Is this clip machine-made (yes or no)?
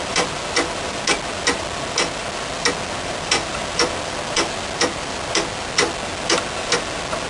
no